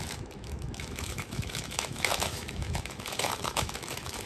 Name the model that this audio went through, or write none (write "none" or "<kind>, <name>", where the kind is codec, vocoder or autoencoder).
autoencoder, DAC-VAE